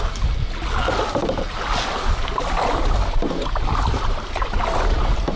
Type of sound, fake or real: real